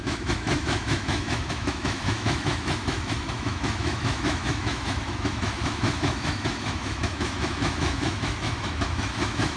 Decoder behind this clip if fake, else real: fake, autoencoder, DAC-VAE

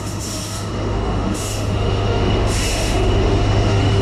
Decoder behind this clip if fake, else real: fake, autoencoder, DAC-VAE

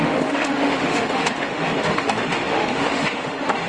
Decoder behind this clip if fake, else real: fake, autoencoder, DAC-VAE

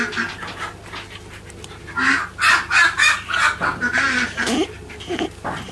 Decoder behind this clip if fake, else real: real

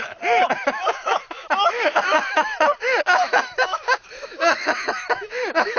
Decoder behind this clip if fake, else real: fake, autoencoder, DAC-VAE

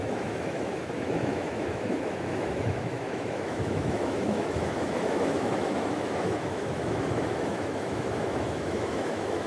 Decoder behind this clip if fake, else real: fake, autoencoder, DAC-VAE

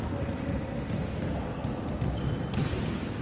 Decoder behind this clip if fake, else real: real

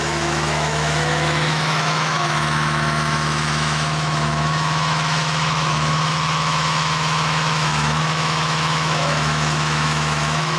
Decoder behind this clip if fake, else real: fake, autoencoder, DAC-VAE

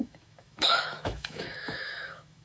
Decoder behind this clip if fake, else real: fake, autoencoder, DAC-VAE